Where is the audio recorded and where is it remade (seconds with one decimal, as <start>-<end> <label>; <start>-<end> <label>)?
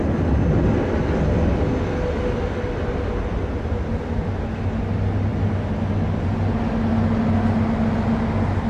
0.0-8.7 recorded